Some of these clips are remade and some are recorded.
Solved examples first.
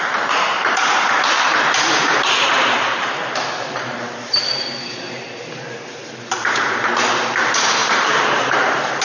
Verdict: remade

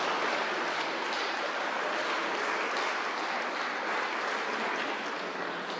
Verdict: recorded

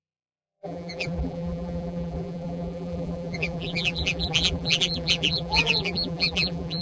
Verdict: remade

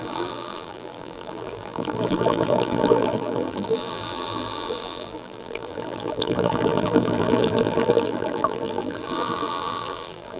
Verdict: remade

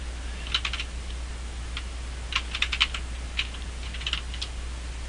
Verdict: recorded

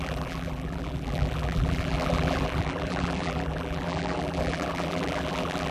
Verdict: remade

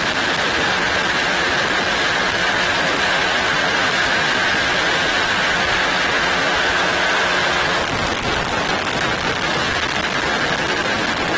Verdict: recorded